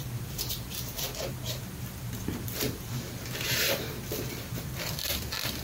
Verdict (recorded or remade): remade